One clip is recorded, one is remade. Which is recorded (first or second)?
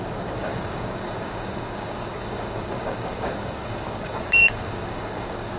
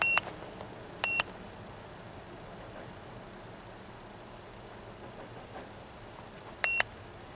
second